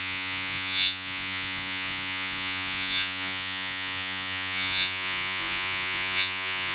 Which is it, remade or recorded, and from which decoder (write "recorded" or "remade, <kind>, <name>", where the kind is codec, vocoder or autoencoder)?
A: remade, vocoder, Vocos